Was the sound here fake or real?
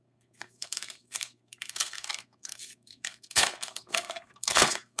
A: fake